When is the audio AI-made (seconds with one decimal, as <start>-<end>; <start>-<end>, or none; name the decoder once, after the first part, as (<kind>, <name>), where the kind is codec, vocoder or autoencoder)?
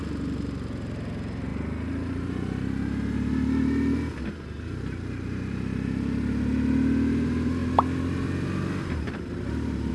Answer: none